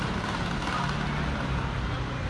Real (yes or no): yes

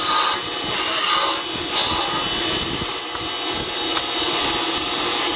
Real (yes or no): yes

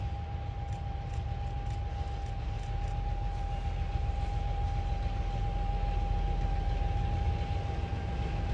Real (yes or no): yes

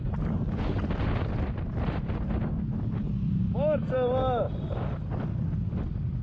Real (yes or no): yes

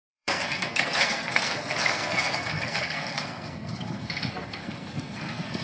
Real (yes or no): no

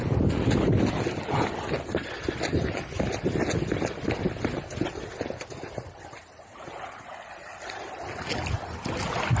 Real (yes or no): yes